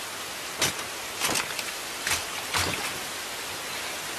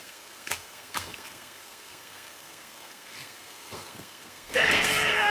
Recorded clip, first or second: first